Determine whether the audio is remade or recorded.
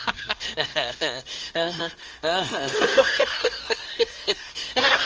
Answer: remade